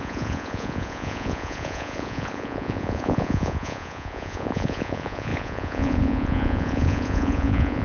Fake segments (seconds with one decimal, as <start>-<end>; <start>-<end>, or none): 0.0-7.8